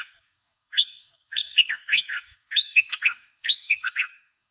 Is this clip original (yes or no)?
no